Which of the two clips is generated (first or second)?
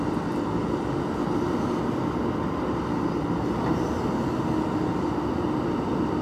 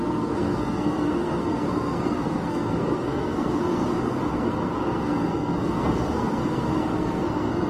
second